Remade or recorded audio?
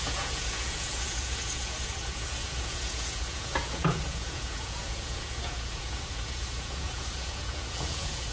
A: remade